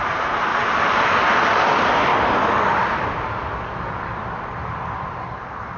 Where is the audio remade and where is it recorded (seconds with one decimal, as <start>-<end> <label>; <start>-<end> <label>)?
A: 0.0-0.5 remade; 0.5-1.0 recorded; 1.0-2.1 remade; 2.1-5.8 recorded